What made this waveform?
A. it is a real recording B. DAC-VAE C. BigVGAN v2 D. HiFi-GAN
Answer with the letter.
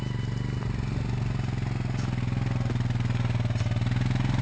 A